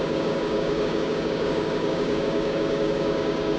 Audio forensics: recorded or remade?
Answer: remade